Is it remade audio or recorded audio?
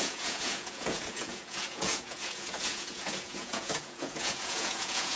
remade